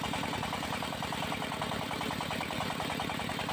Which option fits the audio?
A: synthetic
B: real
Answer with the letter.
B